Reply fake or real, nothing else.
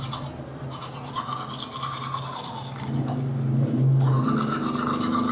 real